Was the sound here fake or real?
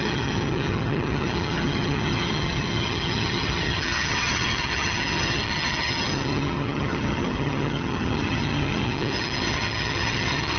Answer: fake